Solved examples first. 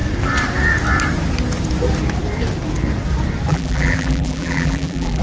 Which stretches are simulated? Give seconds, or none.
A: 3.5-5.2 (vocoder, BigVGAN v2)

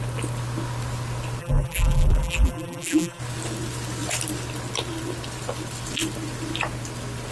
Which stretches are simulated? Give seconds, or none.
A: 1.4-3.2 (vocoder, BigVGAN v2)

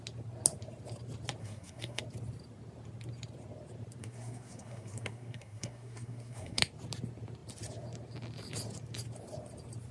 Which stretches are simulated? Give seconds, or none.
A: 1.4-2.0 (codec, SNAC); 4.0-6.6

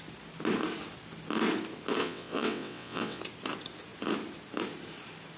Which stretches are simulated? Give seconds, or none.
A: 2.0-3.2 (vocoder, WaveNeXt)